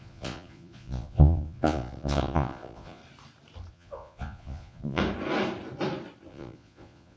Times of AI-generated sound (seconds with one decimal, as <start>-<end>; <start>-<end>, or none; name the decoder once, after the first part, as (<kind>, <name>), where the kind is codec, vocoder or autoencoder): 0.0-3.0 (vocoder, Vocos); 3.7-5.0; 6.3-7.2